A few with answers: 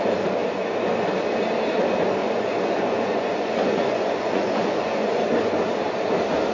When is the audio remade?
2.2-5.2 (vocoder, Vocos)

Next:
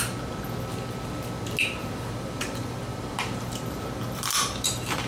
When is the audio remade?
1.8-5.1 (vocoder, BigVGAN v2)

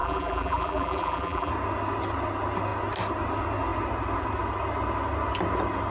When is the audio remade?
0.0-1.5 (vocoder, BigVGAN v2)

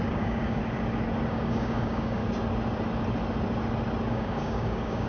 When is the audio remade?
0.0-0.6 (codec, DAC); 1.3-2.2; 4.1-5.1

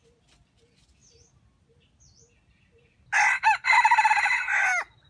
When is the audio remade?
none

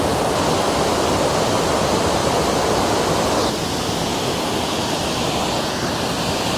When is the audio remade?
none